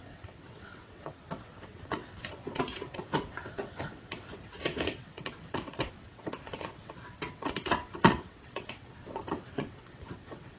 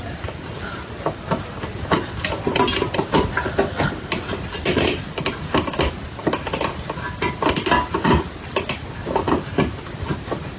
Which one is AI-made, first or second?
first